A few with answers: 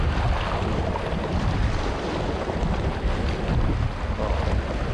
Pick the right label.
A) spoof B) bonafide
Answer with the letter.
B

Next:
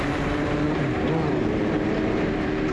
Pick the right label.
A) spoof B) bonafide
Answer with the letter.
A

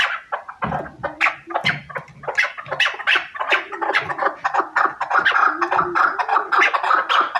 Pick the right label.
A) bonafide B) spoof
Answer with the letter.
A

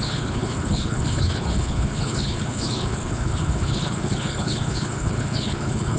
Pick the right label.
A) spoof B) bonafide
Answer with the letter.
A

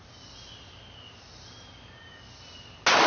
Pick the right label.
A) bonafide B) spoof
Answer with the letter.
A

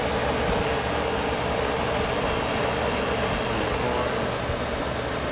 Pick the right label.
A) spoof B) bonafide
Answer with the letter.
B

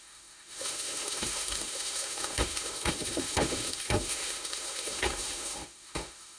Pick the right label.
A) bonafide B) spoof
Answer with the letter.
B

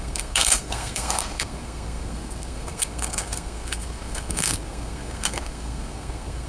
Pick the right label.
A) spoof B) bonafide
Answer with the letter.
A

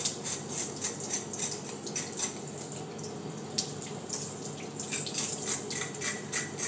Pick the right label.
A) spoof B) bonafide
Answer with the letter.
B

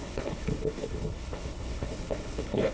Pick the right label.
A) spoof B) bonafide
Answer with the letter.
A